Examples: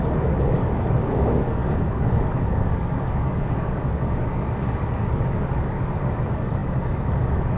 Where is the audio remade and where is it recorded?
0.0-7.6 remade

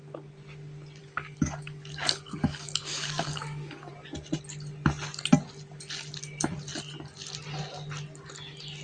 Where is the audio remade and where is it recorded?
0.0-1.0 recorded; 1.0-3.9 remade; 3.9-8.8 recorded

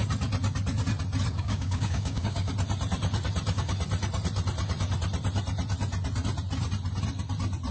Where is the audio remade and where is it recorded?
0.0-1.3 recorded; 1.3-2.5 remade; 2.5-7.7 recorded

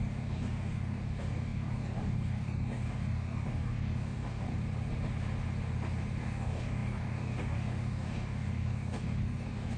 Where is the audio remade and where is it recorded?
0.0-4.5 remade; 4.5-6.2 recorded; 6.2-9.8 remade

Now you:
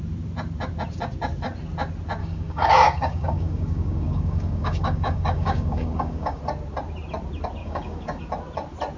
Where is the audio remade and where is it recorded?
0.0-2.2 recorded; 2.2-6.4 remade; 6.4-7.6 recorded; 7.6-8.2 remade; 8.2-9.0 recorded

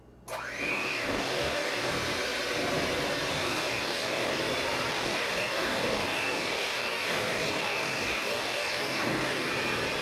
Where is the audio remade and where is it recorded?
0.0-0.7 recorded; 0.7-1.9 remade; 1.9-3.3 recorded; 3.3-4.4 remade; 4.4-4.9 recorded; 4.9-9.5 remade; 9.5-10.0 recorded

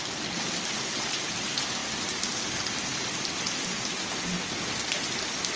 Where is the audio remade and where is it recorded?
0.0-5.6 recorded

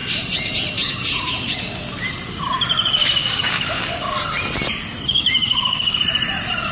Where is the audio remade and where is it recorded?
0.0-3.2 recorded; 3.2-4.0 remade; 4.0-5.1 recorded; 5.1-6.0 remade; 6.0-6.7 recorded